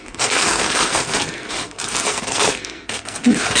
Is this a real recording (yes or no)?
no